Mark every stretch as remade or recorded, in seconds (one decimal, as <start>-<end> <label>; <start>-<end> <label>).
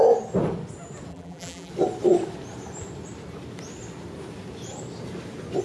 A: 0.0-1.1 recorded; 1.1-1.7 remade; 1.7-5.6 recorded